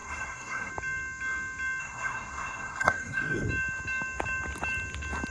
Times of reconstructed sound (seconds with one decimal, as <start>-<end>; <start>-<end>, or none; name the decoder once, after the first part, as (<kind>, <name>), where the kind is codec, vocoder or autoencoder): 0.0-0.7 (codec, SNAC); 1.8-3.5

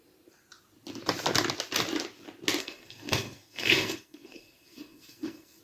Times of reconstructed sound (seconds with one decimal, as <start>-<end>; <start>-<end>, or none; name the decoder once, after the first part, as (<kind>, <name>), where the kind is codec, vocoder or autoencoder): 2.6-5.6 (codec, SNAC)

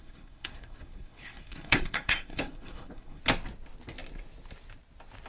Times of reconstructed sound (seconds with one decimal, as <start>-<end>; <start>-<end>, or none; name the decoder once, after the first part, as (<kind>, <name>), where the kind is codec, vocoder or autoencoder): 0.0-3.2 (codec, SNAC)

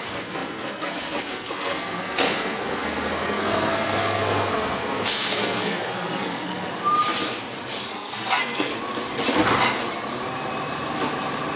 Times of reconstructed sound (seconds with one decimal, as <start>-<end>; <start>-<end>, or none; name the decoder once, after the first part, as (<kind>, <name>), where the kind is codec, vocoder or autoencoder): 0.0-6.7 (codec, SNAC); 7.9-8.7

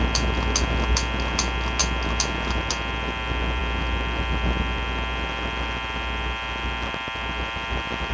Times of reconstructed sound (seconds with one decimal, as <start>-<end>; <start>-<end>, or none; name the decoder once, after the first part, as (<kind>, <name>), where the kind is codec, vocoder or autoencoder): none

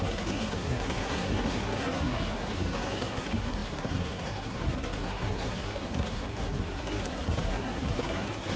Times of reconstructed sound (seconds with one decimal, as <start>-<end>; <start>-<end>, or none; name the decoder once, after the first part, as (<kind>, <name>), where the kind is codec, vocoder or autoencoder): 0.0-8.6 (codec, SNAC)

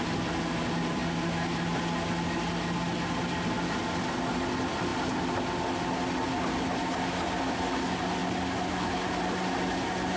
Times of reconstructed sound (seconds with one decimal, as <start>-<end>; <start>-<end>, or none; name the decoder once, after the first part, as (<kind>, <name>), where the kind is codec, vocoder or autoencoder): none